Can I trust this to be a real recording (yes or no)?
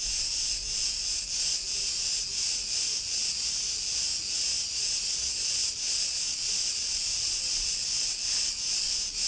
yes